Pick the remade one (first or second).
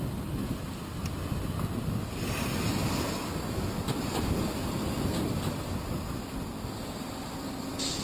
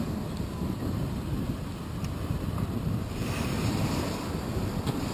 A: second